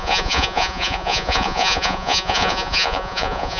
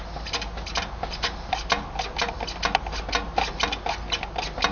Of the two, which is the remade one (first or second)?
first